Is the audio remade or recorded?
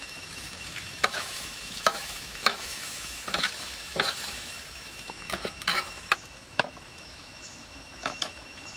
remade